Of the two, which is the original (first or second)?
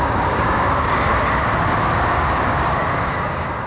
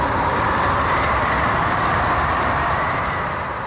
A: second